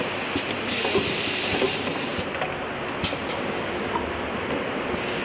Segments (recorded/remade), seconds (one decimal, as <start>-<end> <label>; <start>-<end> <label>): 0.0-5.2 recorded